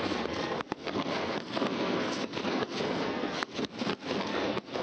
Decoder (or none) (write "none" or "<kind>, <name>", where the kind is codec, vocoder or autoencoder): codec, SNAC